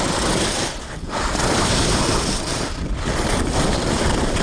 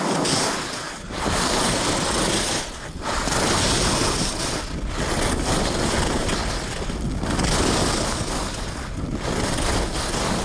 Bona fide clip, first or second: second